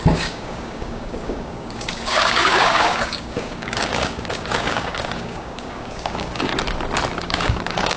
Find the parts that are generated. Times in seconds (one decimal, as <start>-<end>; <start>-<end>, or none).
0.0-6.5; 7.2-8.0